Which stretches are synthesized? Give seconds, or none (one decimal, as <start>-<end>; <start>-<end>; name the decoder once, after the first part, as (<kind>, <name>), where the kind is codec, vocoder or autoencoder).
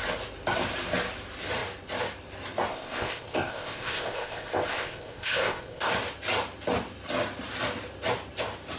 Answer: 2.7-5.9 (codec, ZipCodec)